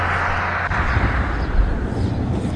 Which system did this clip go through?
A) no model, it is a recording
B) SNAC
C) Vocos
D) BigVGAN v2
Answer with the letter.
A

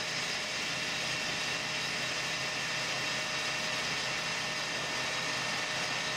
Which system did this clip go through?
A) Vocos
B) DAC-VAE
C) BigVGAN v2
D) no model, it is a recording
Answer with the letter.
D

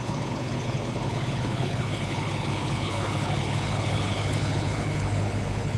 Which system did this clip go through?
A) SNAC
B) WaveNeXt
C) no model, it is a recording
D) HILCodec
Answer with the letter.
D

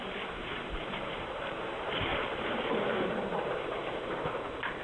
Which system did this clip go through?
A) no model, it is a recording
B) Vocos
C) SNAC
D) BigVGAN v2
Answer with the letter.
D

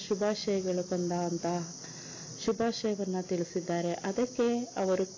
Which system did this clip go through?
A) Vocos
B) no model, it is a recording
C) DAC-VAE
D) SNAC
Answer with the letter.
B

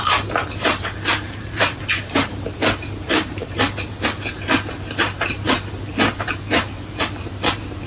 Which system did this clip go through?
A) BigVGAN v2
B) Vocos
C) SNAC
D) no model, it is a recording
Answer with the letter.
A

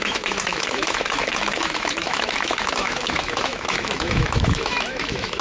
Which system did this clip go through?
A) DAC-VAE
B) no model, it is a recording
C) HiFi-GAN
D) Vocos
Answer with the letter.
A